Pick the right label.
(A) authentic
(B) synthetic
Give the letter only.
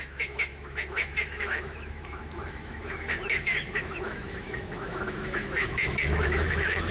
B